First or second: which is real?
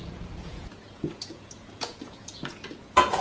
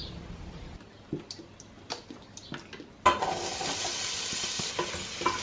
second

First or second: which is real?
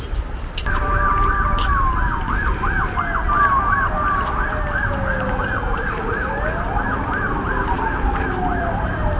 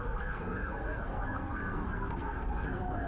first